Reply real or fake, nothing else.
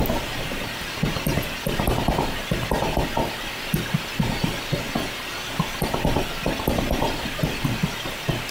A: real